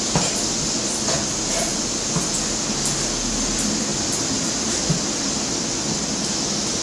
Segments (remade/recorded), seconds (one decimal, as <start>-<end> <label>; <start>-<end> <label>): 0.0-6.8 recorded